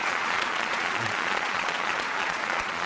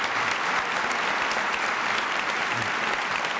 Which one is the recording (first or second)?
second